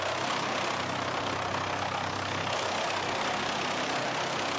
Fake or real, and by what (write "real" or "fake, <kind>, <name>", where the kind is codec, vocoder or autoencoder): real